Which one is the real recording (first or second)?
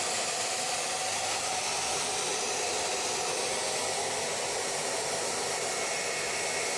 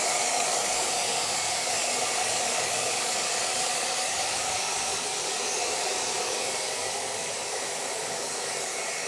first